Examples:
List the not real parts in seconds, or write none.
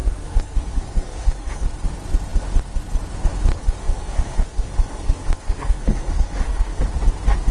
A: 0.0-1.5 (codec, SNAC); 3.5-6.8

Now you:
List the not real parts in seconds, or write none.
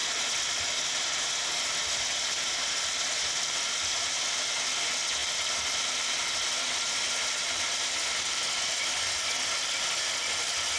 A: none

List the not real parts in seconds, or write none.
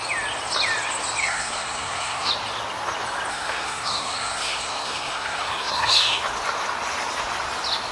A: 1.2-2.3 (codec, SNAC); 3.3-6.2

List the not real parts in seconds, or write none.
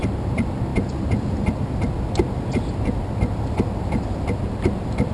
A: none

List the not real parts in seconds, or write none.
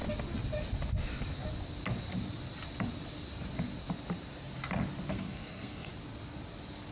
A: 5.1-5.9 (codec, SNAC)